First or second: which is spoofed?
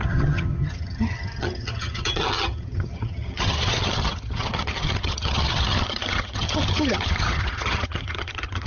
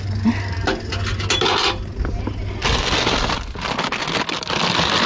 first